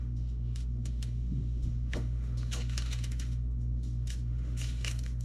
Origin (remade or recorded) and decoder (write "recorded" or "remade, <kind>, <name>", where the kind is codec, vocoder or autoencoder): remade, autoencoder, DAC-VAE